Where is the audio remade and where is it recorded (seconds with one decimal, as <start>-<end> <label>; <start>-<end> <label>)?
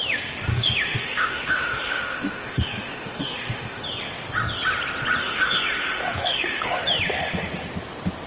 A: 0.0-0.5 recorded; 0.5-3.8 remade; 3.8-5.2 recorded; 5.2-6.8 remade; 6.8-8.3 recorded